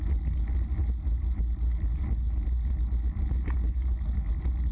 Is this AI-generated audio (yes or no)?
no